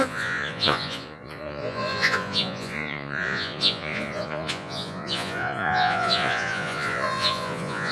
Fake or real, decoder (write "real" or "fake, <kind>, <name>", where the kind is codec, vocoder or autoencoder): fake, vocoder, Vocos